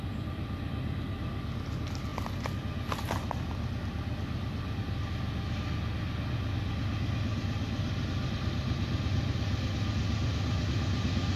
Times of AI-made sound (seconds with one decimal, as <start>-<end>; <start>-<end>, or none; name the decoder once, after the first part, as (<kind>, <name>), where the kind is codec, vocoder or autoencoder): none